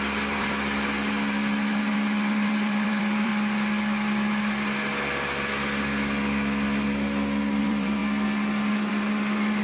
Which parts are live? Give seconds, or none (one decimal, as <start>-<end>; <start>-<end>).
3.3-7.6; 8.0-8.9

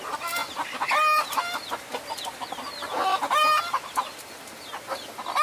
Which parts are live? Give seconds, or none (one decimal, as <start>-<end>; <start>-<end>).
0.0-5.4

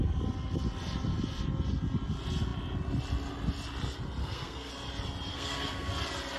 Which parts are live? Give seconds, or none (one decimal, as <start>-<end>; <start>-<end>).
0.0-4.2; 4.7-5.3; 5.9-6.4

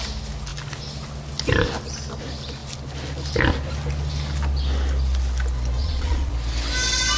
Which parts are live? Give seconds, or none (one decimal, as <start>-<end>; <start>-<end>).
0.0-5.8; 6.3-7.2

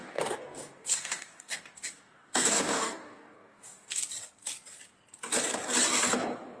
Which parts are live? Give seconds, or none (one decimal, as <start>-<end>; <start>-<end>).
4.0-6.6

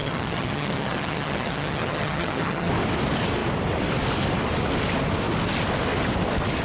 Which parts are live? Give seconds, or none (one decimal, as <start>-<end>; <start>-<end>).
2.7-6.6